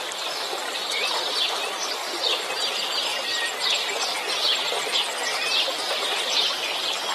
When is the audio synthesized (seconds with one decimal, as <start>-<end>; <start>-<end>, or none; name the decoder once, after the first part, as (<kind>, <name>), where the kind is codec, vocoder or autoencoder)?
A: 0.0-2.0 (vocoder, BigVGAN v2); 2.5-4.8; 5.7-7.1